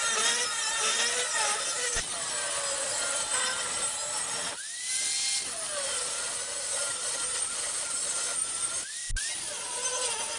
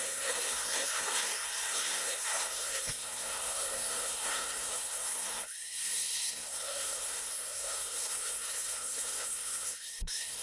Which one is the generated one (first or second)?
second